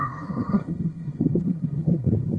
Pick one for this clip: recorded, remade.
remade